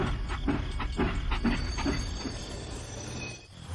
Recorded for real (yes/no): yes